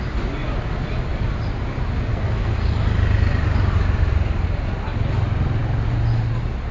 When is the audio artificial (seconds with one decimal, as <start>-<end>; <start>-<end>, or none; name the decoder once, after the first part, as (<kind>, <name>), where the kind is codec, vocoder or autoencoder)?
2.1-2.7 (codec, SNAC)